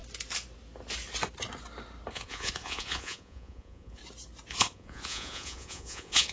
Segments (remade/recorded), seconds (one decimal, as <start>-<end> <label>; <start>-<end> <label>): 0.0-2.1 recorded; 2.1-4.0 remade; 4.0-4.5 recorded; 4.5-6.3 remade